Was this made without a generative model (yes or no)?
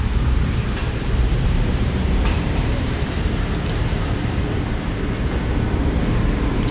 no